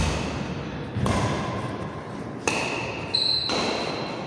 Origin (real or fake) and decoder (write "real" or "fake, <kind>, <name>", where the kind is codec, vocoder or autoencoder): real